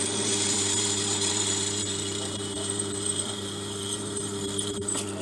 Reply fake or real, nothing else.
fake